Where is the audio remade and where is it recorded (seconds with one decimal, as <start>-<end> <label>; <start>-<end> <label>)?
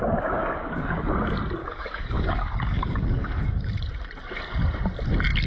0.0-0.4 recorded; 0.4-1.0 remade; 1.0-1.6 recorded; 1.6-3.7 remade; 3.7-5.5 recorded